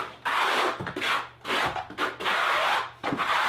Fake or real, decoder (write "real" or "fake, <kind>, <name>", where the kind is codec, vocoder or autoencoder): real